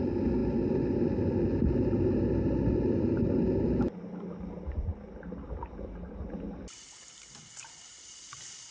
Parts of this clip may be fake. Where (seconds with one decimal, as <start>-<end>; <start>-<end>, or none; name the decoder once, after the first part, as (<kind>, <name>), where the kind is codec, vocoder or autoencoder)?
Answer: none